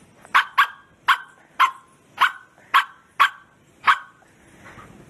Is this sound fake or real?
real